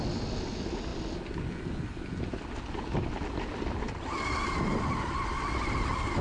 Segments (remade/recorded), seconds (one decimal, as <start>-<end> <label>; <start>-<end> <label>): 0.0-6.2 recorded